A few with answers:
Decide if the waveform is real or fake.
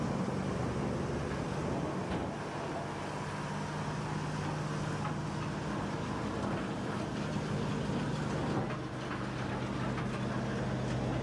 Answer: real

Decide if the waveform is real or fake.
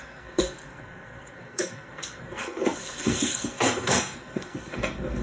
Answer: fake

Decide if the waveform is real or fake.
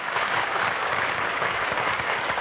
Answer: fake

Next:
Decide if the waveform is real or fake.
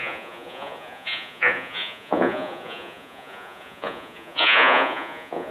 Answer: fake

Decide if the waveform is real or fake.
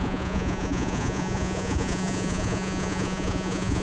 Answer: fake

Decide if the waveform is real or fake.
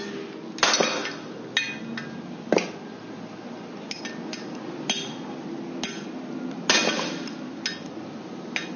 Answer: real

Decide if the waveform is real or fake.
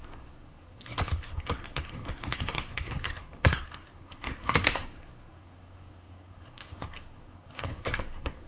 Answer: fake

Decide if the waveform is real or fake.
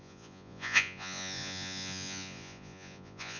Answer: fake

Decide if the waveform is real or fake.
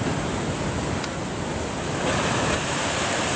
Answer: fake